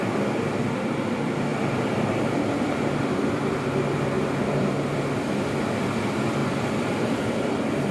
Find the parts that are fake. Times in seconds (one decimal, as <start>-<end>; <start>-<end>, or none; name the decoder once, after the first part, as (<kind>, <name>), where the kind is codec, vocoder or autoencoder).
1.5-4.7 (vocoder, BigVGAN v2); 6.4-7.3